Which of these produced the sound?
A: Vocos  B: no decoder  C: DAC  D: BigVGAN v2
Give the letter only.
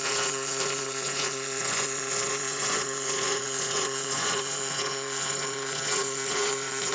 A